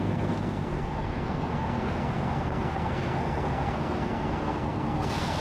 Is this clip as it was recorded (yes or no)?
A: no